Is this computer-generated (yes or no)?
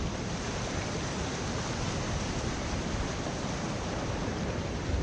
yes